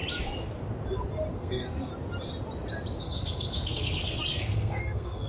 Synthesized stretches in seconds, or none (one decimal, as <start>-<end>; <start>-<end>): 1.3-1.9; 3.0-5.3